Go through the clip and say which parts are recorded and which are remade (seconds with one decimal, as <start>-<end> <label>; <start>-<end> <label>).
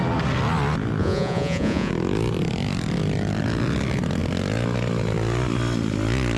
0.0-1.0 recorded; 1.0-1.9 remade; 1.9-6.4 recorded